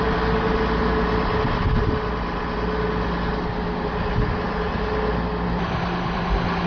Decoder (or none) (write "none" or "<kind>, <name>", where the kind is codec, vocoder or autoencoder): none